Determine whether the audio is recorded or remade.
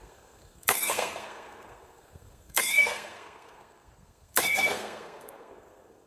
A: remade